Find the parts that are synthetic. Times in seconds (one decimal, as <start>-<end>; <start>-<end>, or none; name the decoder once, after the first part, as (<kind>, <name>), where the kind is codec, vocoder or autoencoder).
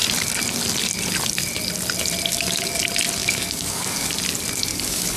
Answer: 2.3-2.8 (codec, DAC); 3.2-4.1; 4.7-5.2